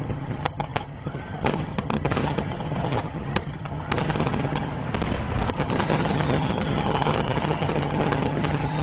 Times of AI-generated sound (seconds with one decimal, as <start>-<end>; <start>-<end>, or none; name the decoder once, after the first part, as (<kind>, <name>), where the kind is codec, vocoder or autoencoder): 0.0-4.8 (vocoder, HiFi-GAN); 5.5-8.8